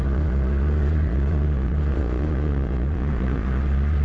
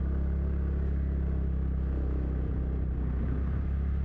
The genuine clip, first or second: second